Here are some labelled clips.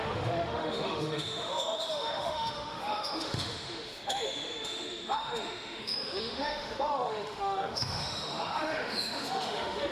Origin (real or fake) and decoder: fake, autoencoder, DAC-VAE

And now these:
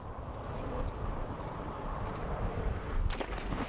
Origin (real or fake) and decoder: real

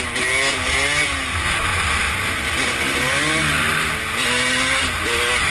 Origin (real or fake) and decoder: real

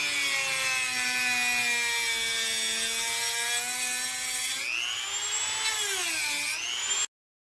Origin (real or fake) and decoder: real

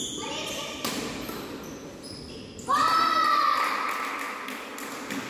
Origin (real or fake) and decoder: real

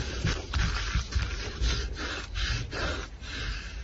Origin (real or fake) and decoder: real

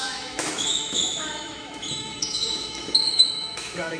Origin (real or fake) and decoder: fake, autoencoder, DAC-VAE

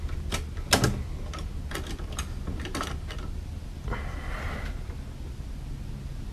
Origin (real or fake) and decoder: real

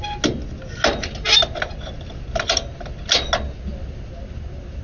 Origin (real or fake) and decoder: real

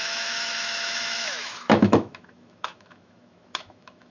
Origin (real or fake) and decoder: fake, autoencoder, DAC-VAE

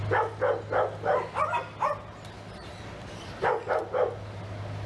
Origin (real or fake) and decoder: real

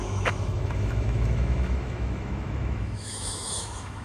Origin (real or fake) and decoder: fake, autoencoder, DAC-VAE